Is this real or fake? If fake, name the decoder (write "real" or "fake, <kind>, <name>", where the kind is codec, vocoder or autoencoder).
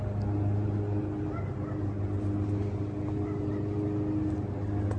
real